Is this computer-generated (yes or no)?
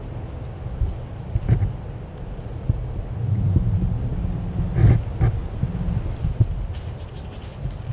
no